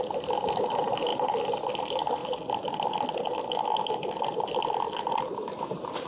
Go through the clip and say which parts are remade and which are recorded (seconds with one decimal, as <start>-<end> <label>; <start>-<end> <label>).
0.0-6.1 recorded

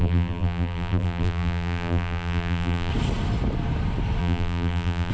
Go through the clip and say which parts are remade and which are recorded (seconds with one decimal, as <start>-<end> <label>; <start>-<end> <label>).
0.0-2.9 remade; 2.9-4.2 recorded; 4.2-5.1 remade

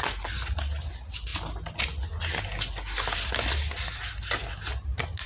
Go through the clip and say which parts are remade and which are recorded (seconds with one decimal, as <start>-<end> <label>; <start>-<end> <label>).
0.0-5.3 recorded

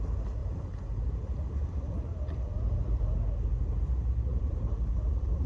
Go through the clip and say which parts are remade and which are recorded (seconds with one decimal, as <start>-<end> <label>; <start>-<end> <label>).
0.0-4.3 recorded; 4.3-5.5 remade